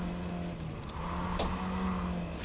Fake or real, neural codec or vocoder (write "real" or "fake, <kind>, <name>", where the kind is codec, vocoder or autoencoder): real